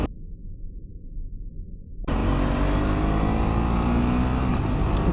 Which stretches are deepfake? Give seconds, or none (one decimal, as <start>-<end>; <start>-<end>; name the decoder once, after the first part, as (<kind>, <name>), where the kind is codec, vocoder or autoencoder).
none